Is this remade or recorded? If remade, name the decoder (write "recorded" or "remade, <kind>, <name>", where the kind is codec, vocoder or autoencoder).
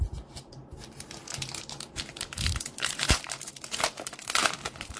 remade, vocoder, BigVGAN v2